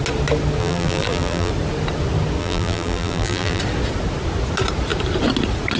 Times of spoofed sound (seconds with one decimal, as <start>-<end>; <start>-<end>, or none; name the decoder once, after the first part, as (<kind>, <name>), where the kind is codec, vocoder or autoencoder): 0.6-1.5 (vocoder, BigVGAN v2); 2.4-3.6